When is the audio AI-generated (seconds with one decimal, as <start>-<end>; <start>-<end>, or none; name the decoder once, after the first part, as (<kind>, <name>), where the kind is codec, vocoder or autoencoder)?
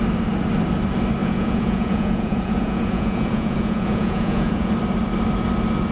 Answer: 1.2-4.7 (vocoder, Vocos)